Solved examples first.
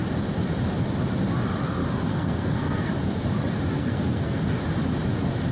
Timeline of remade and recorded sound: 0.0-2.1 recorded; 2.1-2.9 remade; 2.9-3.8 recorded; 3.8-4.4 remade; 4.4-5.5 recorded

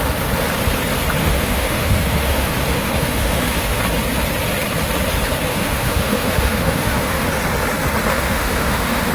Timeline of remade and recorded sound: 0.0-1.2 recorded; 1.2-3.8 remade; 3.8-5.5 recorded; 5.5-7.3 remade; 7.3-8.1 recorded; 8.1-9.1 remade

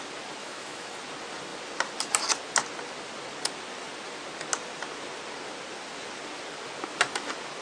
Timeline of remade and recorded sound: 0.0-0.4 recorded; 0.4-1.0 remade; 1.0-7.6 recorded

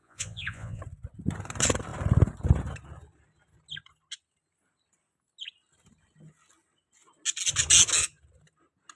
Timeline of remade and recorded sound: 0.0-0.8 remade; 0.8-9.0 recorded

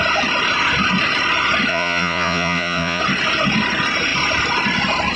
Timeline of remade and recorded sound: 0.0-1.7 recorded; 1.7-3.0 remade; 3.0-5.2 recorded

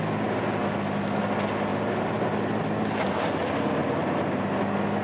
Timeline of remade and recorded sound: 0.0-5.0 recorded

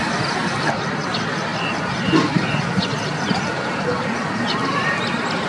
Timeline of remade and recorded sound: 0.0-1.5 recorded; 1.5-3.8 remade; 3.8-5.5 recorded